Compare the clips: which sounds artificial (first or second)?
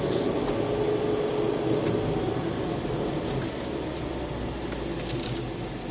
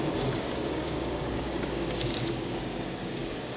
second